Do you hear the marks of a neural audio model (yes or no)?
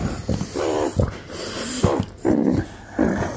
no